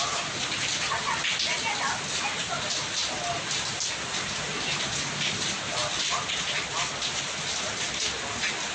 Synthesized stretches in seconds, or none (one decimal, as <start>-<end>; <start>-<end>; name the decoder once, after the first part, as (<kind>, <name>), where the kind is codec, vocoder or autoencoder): none